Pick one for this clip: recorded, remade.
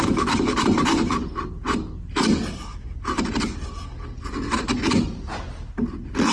recorded